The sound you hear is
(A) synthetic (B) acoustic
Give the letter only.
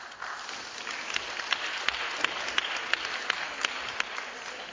B